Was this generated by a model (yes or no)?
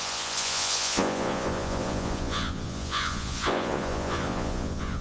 yes